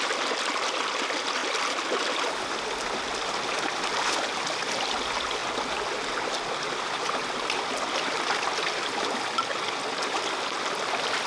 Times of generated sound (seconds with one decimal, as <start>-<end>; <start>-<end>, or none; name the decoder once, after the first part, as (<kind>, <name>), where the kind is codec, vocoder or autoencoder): none